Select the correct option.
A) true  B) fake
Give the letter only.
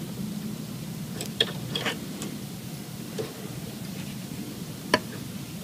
B